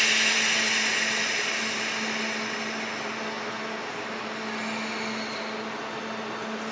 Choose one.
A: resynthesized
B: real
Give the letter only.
B